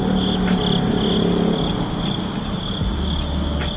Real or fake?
real